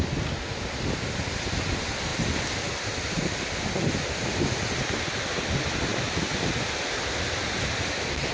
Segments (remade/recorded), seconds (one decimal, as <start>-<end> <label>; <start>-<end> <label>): 0.0-8.3 recorded